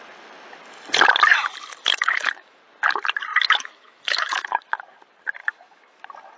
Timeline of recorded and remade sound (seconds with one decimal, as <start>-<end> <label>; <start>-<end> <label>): 0.0-1.8 recorded; 1.8-2.6 remade; 2.6-3.3 recorded; 3.3-4.8 remade; 4.8-5.4 recorded; 5.4-6.0 remade; 6.0-6.4 recorded